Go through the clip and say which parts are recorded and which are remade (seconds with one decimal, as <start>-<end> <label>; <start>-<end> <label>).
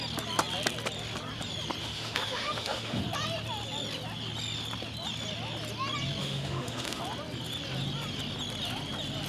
0.0-1.8 recorded; 1.8-3.0 remade; 3.0-6.2 recorded; 6.2-7.0 remade; 7.0-9.3 recorded